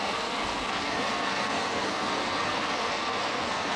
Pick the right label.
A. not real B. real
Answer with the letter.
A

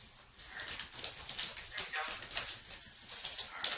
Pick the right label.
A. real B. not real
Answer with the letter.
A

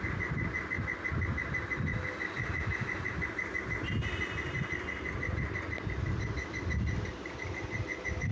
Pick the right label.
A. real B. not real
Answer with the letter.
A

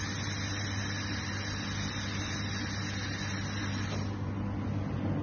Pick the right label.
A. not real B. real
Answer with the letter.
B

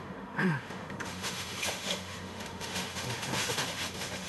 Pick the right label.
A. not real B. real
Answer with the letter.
A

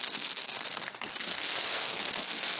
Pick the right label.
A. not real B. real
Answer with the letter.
A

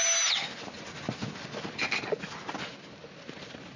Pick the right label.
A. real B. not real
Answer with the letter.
A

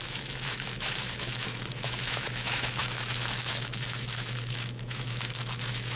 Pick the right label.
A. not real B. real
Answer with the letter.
A